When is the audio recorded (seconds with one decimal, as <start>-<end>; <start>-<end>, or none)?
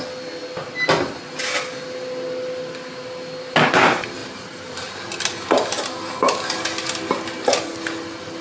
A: 0.0-4.2; 4.9-8.4